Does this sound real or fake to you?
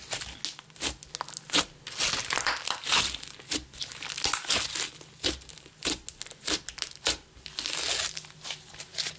real